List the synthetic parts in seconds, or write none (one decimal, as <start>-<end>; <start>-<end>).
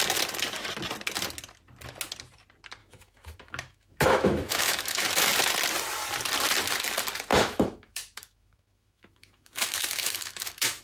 2.8-5.3; 7.3-10.8